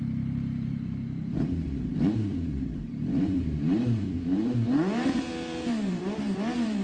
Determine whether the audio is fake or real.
fake